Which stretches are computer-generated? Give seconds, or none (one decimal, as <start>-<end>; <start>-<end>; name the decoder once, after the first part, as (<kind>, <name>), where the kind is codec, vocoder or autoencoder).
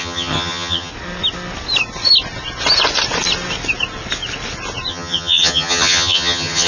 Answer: 0.0-0.9 (vocoder, HiFi-GAN); 4.9-6.7